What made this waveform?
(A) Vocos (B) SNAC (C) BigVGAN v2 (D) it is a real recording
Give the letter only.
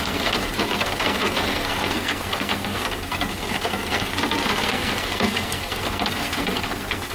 B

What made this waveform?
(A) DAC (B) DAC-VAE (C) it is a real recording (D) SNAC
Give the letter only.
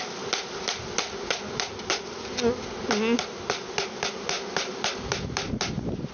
C